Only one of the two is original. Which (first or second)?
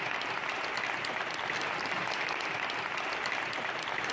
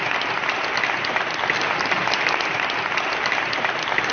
second